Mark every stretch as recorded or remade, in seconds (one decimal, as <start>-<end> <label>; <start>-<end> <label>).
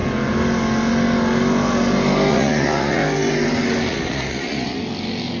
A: 0.0-2.3 recorded; 2.3-3.0 remade; 3.0-3.9 recorded; 3.9-4.8 remade; 4.8-5.4 recorded